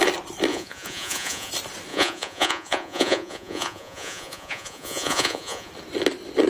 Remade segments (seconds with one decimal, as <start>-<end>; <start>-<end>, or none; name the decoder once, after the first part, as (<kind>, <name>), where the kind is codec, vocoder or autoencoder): 0.5-1.5 (vocoder, Vocos); 1.9-5.7

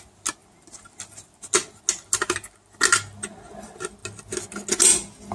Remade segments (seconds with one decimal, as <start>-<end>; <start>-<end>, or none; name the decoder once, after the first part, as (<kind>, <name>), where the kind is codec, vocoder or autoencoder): none